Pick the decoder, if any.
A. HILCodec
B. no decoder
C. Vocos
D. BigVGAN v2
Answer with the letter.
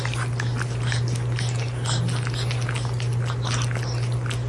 B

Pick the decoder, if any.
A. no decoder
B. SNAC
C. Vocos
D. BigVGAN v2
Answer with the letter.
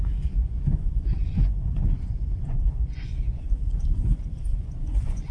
C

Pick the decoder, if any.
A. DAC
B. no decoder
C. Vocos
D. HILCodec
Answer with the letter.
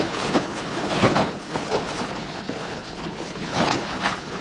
D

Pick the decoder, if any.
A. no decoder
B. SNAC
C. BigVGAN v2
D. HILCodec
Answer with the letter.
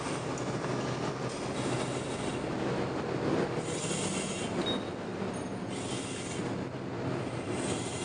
A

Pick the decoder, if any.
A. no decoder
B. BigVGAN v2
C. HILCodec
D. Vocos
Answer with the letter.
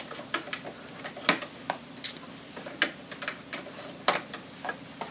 A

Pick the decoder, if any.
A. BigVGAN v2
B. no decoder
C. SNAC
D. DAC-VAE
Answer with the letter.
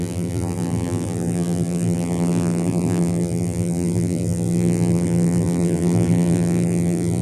A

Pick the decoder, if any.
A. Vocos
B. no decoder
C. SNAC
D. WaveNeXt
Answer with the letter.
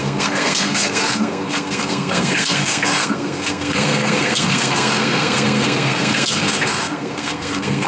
C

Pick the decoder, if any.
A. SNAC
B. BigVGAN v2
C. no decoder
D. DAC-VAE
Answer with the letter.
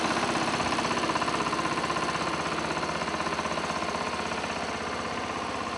C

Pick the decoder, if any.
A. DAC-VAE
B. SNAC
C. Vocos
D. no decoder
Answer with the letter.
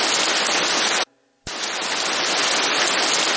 D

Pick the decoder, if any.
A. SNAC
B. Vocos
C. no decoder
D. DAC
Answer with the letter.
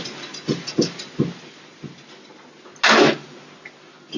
C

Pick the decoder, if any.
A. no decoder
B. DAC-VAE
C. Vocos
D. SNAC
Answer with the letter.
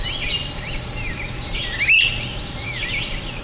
A